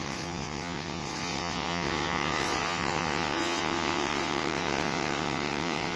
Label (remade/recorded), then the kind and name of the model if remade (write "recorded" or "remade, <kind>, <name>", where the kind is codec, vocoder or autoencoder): remade, vocoder, WaveNeXt